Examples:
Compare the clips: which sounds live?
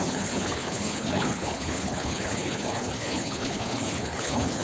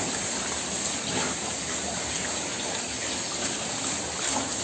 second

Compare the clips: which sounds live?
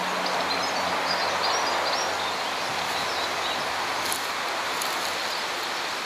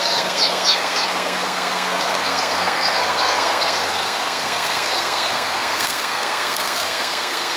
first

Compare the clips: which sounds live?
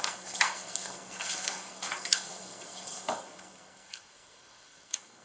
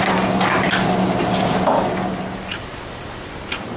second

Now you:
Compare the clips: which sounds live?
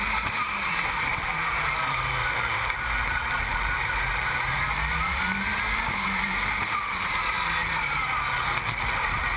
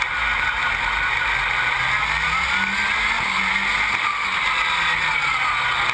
second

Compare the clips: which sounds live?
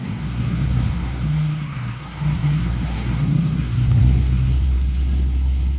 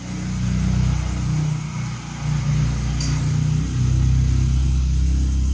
second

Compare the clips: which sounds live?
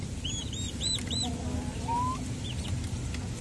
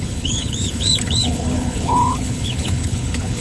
first